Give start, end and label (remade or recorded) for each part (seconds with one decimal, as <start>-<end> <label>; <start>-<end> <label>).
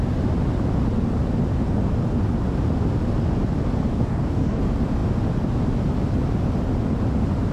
0.0-3.9 recorded; 3.9-4.6 remade; 4.6-7.5 recorded